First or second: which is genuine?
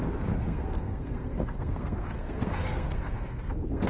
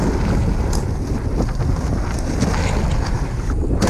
second